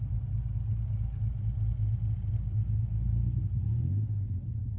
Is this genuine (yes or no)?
yes